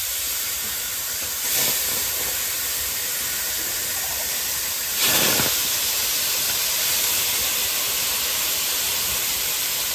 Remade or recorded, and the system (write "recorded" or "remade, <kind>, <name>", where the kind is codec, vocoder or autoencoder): remade, vocoder, BigVGAN v2